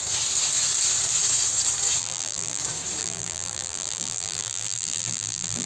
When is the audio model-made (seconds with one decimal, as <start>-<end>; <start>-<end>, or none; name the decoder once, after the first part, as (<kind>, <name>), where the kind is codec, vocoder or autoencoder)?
2.0-2.6 (vocoder, BigVGAN v2); 3.0-5.7